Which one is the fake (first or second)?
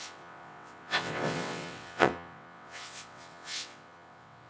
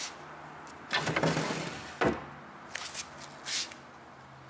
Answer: first